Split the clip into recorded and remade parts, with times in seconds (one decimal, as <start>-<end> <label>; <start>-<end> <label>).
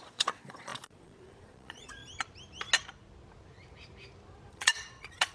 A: 0.0-2.0 remade; 2.0-4.5 recorded; 4.5-5.3 remade